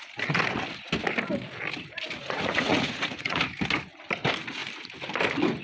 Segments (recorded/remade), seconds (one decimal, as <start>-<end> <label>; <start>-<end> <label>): 0.0-2.2 recorded; 2.2-3.4 remade; 3.4-5.6 recorded